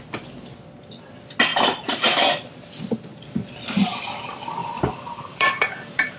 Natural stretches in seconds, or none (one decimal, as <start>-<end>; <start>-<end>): 0.0-1.5; 2.7-3.1; 3.9-4.6